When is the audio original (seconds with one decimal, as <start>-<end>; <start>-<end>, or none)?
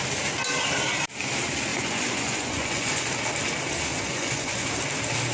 0.0-1.7; 3.1-3.9; 4.7-5.3